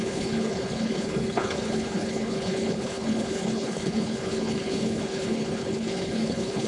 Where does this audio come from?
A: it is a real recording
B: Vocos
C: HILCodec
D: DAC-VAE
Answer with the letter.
C